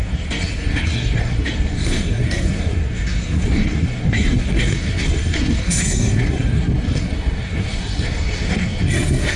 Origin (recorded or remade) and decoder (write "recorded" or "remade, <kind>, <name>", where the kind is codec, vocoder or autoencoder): remade, codec, SNAC